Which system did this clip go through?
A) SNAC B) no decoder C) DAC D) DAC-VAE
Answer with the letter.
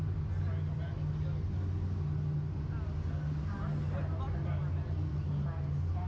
B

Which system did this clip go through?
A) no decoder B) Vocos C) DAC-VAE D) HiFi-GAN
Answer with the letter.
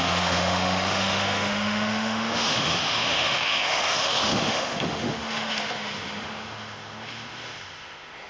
C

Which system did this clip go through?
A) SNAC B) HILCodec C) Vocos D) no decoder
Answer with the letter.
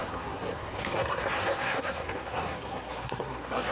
A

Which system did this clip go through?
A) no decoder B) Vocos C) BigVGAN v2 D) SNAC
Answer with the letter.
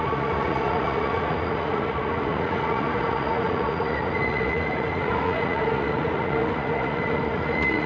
B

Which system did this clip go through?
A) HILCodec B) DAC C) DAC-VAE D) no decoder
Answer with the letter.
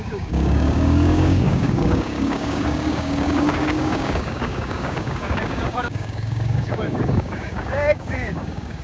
B